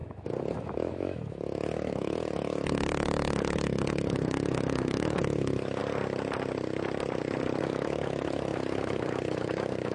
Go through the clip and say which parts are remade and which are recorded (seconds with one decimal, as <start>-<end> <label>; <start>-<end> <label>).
0.0-5.8 remade; 5.8-7.6 recorded; 7.6-9.9 remade